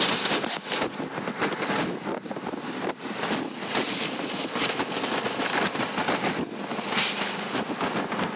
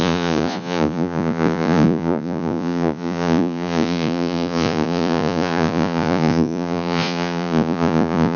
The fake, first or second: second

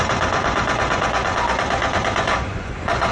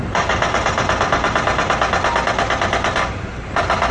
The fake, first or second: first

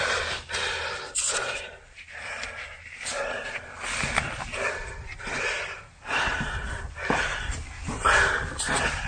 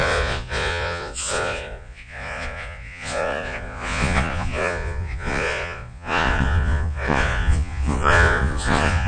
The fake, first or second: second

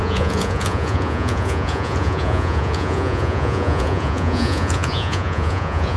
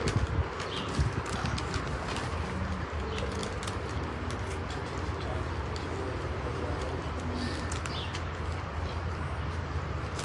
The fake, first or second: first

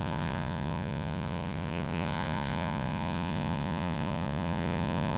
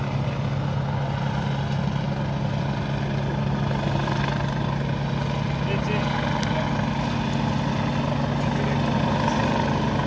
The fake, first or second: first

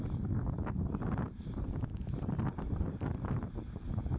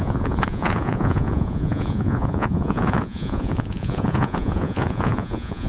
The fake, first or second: second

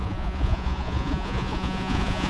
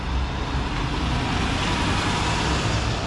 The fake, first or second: first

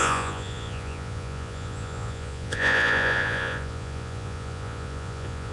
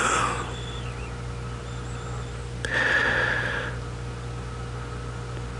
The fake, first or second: first